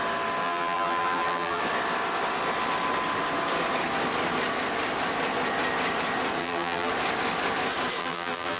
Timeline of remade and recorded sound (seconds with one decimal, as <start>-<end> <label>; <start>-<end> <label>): 0.0-0.4 recorded; 0.4-1.6 remade; 1.6-6.4 recorded; 6.4-6.9 remade; 6.9-8.0 recorded; 8.0-8.6 remade